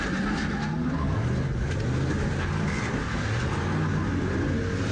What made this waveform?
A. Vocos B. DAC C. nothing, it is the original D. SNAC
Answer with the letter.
C